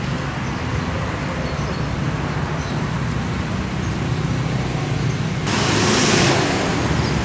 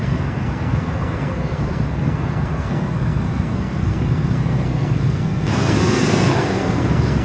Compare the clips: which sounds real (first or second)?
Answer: first